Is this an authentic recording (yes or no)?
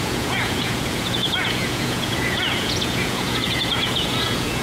no